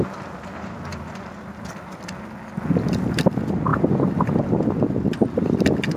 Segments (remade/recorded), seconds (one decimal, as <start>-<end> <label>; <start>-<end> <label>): 0.0-0.9 recorded; 0.9-2.2 remade; 2.2-6.0 recorded